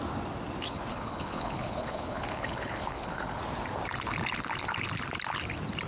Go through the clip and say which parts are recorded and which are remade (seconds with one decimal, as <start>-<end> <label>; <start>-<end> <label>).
0.0-0.9 recorded; 0.9-3.4 remade; 3.4-5.9 recorded

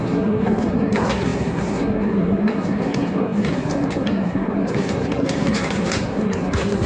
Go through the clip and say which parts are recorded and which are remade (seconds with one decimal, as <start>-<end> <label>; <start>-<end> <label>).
0.0-6.9 remade

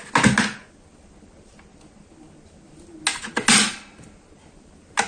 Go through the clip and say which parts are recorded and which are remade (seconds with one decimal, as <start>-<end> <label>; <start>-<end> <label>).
0.0-5.1 recorded

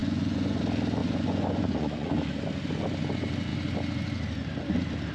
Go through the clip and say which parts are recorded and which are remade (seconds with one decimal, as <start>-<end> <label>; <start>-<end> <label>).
0.0-0.6 remade; 0.6-1.0 recorded; 1.0-2.1 remade; 2.1-5.1 recorded

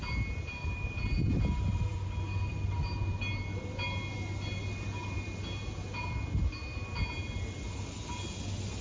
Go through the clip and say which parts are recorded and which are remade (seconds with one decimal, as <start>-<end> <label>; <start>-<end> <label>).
0.0-8.8 recorded

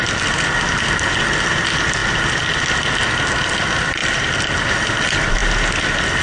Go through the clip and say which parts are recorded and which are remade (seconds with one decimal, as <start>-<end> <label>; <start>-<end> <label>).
0.0-6.2 recorded

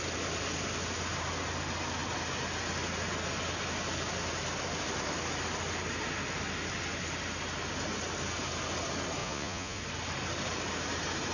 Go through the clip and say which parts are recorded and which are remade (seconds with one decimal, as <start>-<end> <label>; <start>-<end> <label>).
0.0-9.2 recorded; 9.2-9.8 remade; 9.8-11.3 recorded

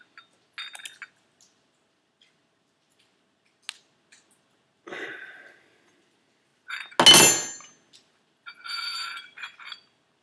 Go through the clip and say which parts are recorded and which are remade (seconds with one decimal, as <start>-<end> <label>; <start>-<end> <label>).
0.0-10.2 recorded